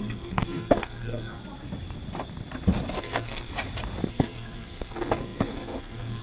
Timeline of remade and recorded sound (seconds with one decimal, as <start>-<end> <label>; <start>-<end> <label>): 0.0-1.4 remade; 1.4-3.0 recorded; 3.0-3.5 remade; 3.5-4.1 recorded; 4.1-6.2 remade